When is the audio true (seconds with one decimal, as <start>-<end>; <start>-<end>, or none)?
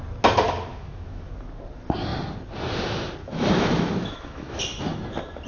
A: 0.0-0.7; 1.3-3.2; 4.6-5.5